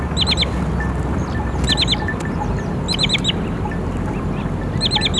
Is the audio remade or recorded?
recorded